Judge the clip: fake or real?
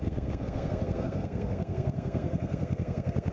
fake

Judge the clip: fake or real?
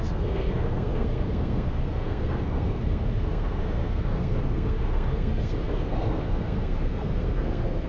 fake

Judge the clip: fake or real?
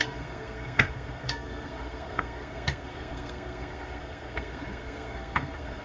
fake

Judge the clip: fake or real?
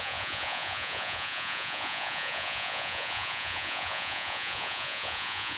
fake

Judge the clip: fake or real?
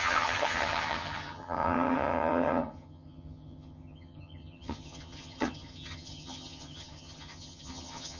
fake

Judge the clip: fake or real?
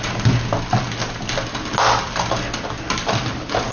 real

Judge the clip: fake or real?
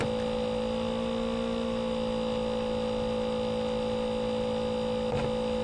real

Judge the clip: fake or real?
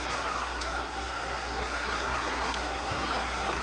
fake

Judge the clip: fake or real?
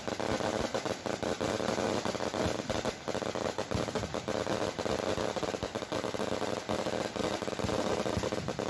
real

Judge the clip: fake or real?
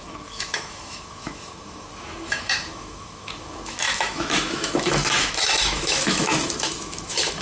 fake